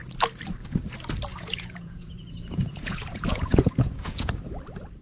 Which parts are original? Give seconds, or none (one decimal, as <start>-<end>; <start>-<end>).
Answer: 0.0-1.3; 4.3-5.0